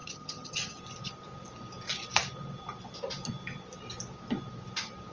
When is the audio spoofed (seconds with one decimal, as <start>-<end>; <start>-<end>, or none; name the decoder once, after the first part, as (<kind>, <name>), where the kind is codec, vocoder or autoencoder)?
0.0-0.8 (vocoder, HiFi-GAN)